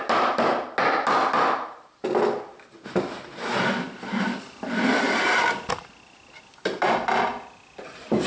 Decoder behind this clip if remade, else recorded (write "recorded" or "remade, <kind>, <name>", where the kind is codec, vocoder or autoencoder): recorded